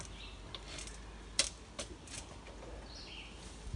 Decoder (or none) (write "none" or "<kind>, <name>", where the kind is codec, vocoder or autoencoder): none